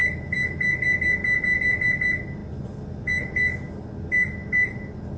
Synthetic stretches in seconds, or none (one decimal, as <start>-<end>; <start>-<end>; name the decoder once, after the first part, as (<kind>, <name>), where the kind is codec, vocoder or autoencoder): none